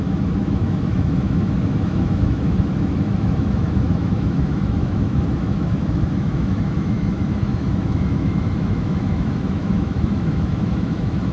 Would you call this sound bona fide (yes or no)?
no